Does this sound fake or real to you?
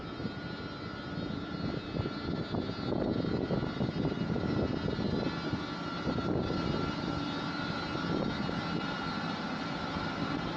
real